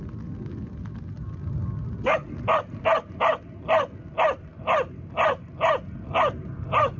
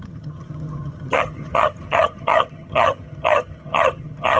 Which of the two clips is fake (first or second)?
second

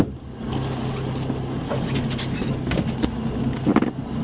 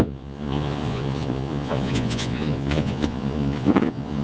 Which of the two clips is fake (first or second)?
second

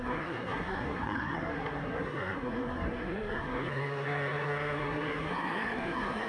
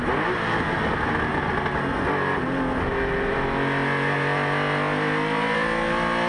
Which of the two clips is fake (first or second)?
first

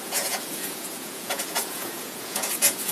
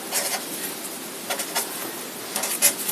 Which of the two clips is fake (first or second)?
first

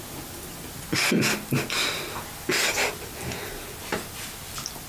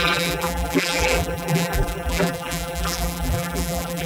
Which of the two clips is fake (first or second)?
second